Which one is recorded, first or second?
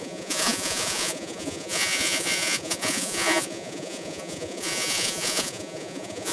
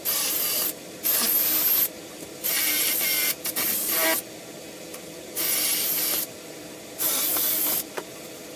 second